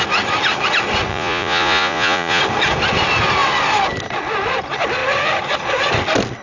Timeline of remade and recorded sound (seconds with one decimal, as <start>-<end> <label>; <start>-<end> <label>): 0.0-1.1 recorded; 1.1-2.4 remade; 2.4-6.4 recorded